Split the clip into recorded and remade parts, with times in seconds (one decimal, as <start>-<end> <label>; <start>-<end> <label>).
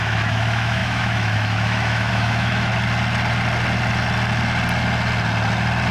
0.0-2.7 remade; 2.7-5.9 recorded